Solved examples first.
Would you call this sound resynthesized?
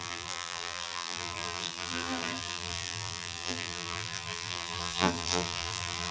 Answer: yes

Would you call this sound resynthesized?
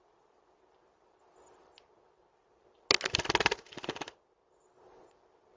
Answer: no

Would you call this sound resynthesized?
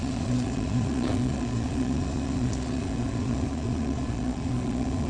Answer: yes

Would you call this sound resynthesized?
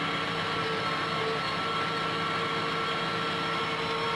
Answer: no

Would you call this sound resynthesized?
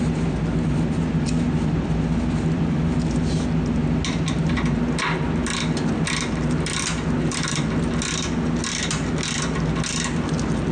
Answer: no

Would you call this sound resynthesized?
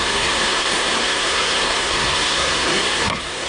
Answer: yes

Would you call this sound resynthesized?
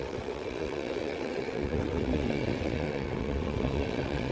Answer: yes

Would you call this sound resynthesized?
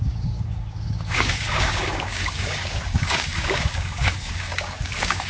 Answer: yes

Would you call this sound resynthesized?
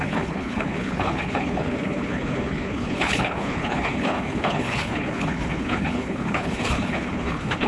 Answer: yes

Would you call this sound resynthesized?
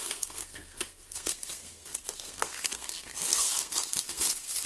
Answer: yes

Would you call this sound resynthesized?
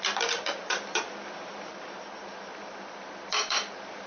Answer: yes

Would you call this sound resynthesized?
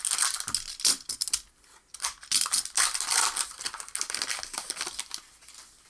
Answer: no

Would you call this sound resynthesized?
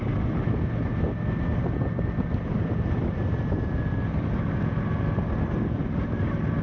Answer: no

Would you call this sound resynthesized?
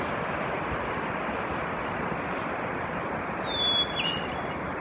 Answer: no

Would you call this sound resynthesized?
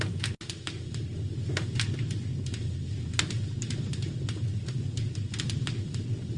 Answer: no